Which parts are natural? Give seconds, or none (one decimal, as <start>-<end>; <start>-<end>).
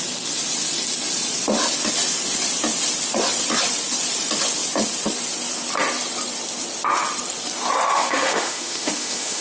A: 0.0-7.9